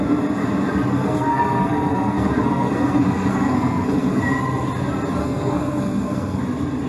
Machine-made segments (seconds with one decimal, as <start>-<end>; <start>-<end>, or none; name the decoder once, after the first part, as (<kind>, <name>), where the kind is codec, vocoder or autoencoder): 0.9-4.2 (codec, SNAC); 5.2-6.4